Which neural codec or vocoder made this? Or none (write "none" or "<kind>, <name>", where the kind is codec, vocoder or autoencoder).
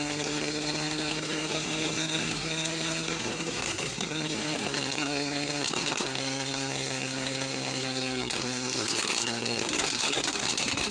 codec, SNAC